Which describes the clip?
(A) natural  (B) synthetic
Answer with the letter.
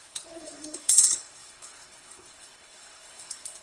B